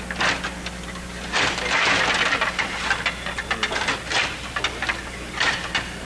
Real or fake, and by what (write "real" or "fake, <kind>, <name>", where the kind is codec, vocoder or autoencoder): real